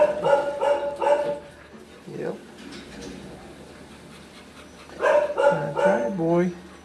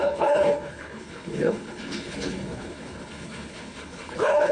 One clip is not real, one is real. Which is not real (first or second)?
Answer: second